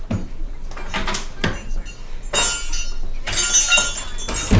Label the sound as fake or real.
real